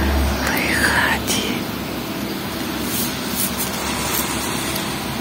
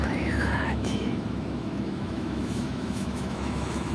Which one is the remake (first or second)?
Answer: second